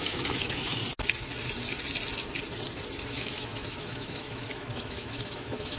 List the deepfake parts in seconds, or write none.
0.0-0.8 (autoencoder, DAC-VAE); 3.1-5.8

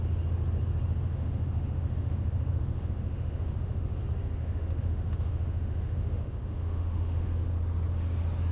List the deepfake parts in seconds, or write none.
1.1-4.0 (autoencoder, DAC-VAE); 4.4-7.3